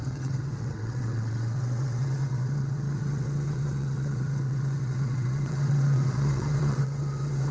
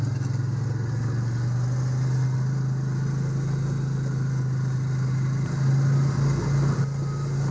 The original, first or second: second